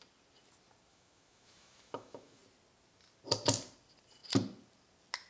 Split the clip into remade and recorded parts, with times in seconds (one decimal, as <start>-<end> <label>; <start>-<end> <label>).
0.0-0.9 recorded; 0.9-2.4 remade; 2.4-5.3 recorded